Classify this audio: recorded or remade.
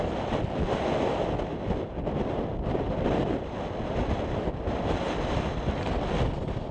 recorded